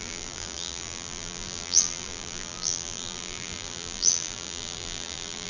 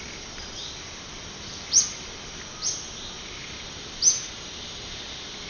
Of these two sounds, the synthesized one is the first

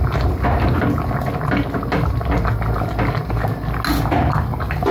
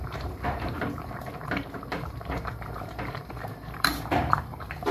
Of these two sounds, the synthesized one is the second